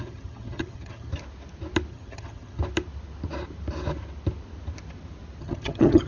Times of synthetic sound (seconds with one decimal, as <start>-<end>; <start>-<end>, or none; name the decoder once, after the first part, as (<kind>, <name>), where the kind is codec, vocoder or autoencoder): 0.0-1.1 (vocoder, HiFi-GAN); 1.9-2.6; 5.4-6.1